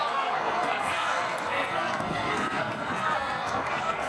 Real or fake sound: fake